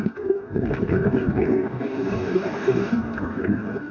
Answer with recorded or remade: remade